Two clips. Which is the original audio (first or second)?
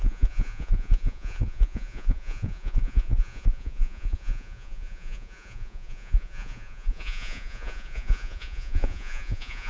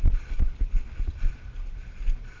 second